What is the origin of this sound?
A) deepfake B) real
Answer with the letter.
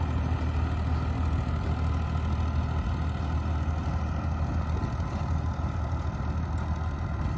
B